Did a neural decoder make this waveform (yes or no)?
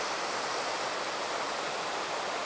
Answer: no